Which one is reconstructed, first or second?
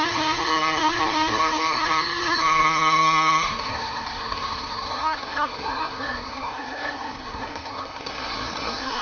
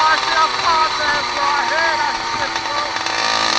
first